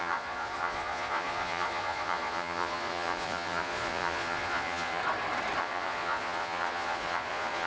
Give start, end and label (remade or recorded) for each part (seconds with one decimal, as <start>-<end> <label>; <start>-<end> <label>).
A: 0.0-5.0 remade; 5.0-5.6 recorded; 5.6-7.7 remade